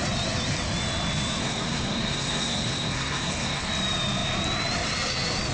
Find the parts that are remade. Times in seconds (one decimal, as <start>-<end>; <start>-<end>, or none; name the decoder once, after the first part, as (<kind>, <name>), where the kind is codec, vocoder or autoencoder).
1.4-3.7 (codec, SNAC)

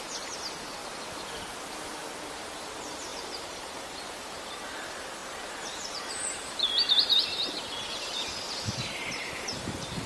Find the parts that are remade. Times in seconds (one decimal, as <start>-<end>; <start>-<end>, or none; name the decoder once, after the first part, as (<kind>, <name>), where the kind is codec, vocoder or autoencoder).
0.0-0.8 (vocoder, BigVGAN v2); 2.3-10.1

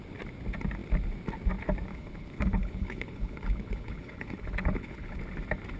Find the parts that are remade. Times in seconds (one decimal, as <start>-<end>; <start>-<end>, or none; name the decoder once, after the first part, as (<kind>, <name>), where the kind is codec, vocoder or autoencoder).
1.9-5.2 (codec, HILCodec)

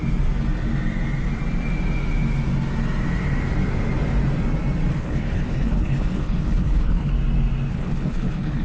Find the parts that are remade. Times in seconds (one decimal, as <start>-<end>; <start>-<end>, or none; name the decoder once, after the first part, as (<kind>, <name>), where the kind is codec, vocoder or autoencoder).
4.9-7.1 (codec, HILCodec); 7.7-8.6

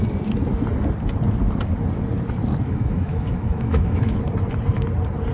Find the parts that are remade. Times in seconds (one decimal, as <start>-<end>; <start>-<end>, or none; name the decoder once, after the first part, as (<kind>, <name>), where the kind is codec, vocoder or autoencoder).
2.5-4.2 (autoencoder, DAC-VAE)

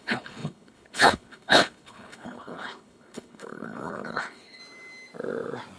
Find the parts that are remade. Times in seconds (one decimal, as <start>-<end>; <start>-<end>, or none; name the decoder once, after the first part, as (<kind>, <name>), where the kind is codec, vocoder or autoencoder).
0.0-4.6 (codec, HILCodec)

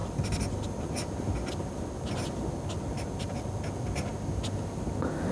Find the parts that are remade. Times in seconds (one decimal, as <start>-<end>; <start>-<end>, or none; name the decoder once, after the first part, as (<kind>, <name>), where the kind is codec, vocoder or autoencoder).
none

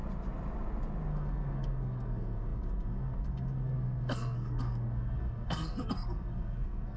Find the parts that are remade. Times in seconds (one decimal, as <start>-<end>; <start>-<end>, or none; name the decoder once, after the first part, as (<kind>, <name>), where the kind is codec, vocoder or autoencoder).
1.1-7.0 (codec, SNAC)